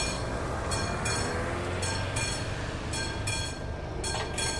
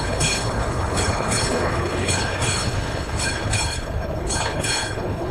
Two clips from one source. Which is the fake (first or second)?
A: second